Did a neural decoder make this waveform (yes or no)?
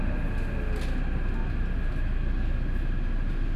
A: no